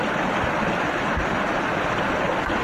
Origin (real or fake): real